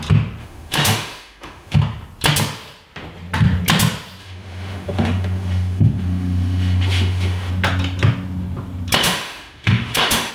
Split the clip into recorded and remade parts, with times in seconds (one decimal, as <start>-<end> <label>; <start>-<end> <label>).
0.0-0.4 recorded; 0.4-1.8 remade; 1.8-4.2 recorded; 4.2-7.5 remade; 7.5-9.0 recorded; 9.0-10.3 remade